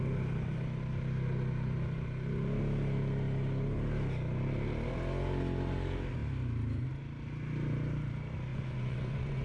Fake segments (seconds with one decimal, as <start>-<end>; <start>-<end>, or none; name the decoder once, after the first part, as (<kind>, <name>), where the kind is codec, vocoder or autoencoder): 8.5-9.4 (vocoder, Vocos)